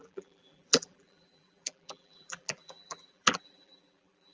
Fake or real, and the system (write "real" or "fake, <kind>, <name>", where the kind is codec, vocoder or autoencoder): fake, vocoder, BigVGAN v2